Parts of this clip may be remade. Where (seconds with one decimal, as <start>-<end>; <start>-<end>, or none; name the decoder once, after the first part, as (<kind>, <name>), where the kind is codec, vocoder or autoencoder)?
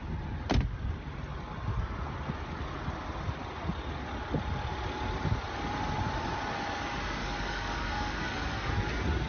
7.2-8.7 (codec, DAC)